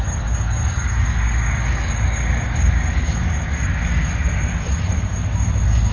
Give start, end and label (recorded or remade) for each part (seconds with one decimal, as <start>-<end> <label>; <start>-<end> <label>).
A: 0.0-0.6 recorded; 0.6-4.1 remade; 4.1-5.9 recorded